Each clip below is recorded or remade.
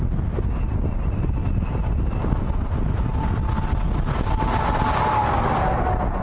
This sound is recorded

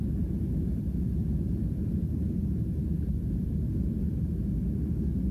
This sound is remade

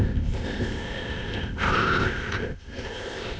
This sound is remade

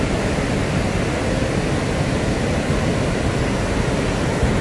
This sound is recorded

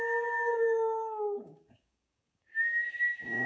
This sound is remade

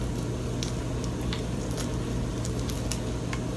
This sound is recorded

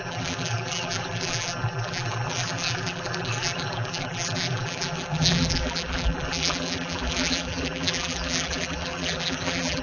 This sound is remade